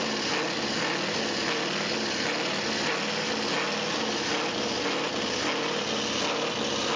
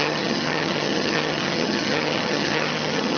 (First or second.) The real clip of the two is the first